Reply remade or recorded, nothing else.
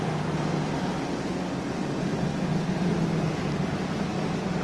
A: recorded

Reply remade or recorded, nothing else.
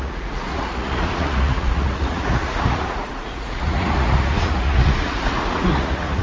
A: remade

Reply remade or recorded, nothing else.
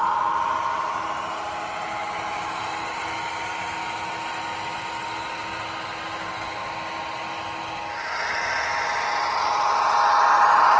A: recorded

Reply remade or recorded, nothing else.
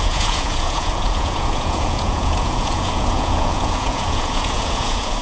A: remade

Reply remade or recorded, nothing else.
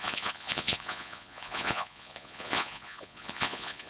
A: remade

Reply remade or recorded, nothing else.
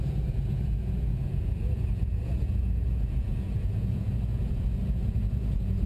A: remade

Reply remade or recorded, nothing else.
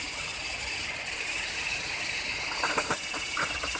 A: recorded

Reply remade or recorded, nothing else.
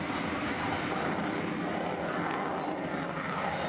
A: recorded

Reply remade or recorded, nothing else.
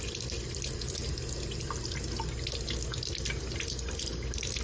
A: recorded